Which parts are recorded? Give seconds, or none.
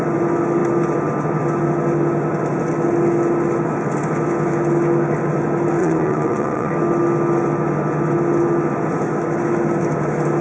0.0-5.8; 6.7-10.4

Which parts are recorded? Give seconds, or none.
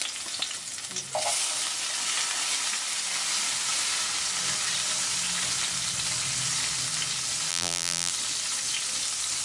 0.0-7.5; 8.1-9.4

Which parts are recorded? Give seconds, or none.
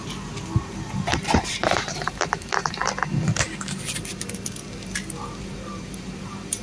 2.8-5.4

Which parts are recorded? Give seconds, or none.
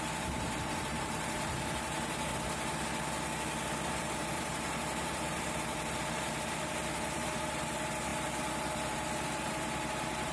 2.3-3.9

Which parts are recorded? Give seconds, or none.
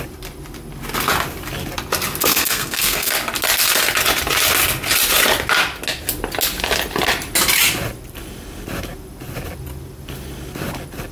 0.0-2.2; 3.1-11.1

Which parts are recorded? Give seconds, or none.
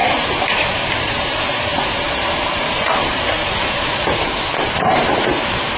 none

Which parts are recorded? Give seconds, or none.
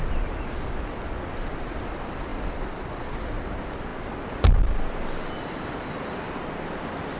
0.0-7.2